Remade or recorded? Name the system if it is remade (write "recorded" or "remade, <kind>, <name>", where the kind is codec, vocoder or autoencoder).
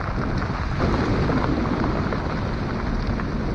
recorded